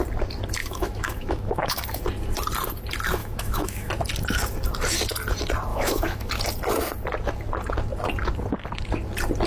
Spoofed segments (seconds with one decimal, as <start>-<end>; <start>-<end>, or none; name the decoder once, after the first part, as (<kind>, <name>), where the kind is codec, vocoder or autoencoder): 0.6-2.0 (autoencoder, DAC-VAE); 3.2-3.9; 5.7-6.3